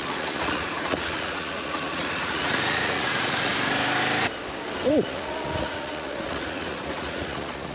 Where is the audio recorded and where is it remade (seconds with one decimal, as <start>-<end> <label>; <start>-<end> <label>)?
0.0-3.5 remade; 3.5-4.9 recorded; 4.9-7.7 remade